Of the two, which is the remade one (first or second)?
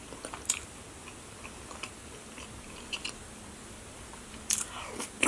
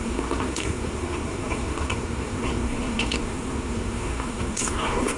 second